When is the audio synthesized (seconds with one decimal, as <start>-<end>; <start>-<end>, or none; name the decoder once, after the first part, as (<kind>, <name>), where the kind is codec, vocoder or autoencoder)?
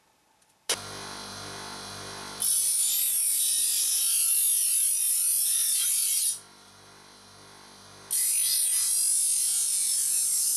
none